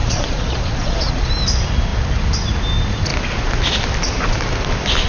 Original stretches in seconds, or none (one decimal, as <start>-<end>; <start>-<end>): 1.3-5.1